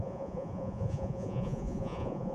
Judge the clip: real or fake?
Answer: fake